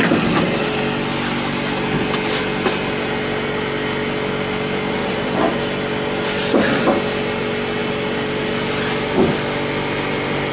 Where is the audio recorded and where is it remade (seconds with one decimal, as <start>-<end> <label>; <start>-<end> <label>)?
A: 0.0-5.0 recorded; 5.0-5.6 remade; 5.6-10.5 recorded